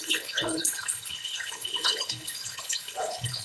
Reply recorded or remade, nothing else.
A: remade